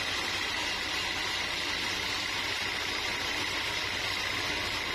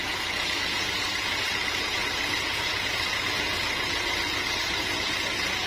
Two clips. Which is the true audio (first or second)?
first